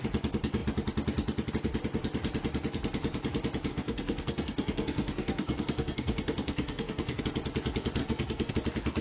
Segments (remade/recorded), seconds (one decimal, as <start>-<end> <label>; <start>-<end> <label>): 0.0-3.7 recorded; 3.7-7.2 remade; 7.2-8.0 recorded; 8.0-8.5 remade; 8.5-9.0 recorded